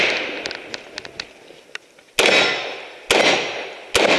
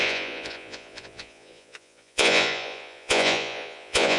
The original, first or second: first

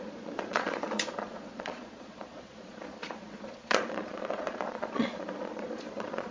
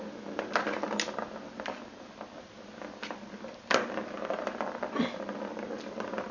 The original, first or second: second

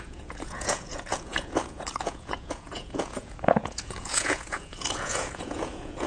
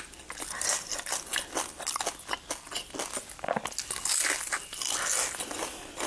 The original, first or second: second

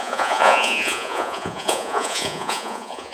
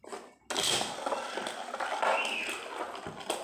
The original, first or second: second